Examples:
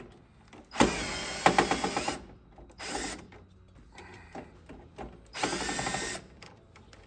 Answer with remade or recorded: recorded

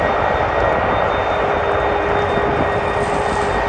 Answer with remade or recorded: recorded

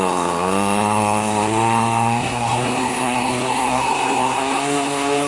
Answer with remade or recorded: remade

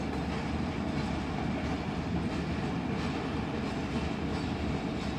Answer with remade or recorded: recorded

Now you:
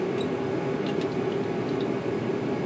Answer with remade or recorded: recorded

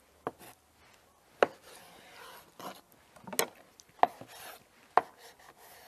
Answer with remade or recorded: recorded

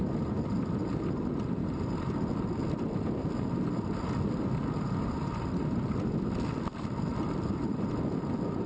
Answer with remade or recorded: recorded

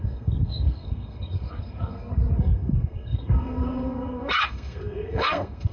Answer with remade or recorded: remade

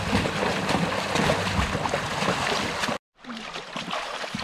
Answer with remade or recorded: recorded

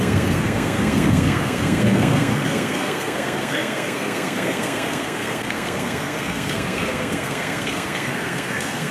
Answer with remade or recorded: remade